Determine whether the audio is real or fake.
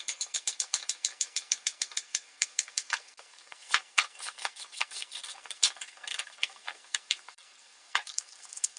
fake